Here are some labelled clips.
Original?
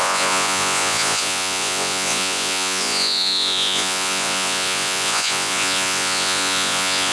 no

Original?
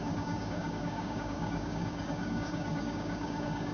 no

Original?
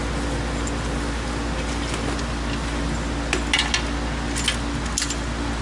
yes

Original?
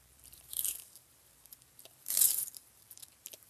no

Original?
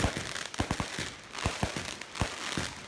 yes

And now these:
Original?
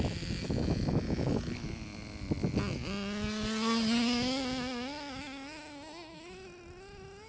yes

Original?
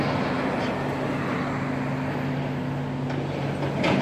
yes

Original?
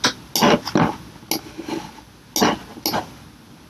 yes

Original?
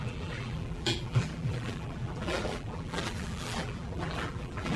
no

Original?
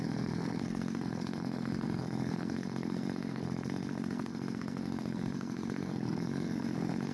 no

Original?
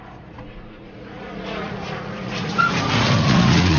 no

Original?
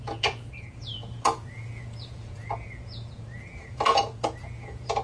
no